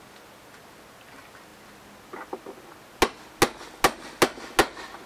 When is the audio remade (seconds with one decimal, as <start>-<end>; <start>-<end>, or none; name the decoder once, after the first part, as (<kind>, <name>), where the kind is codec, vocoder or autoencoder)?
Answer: none